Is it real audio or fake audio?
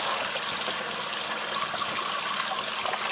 real